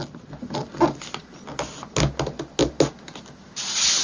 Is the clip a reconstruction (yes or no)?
no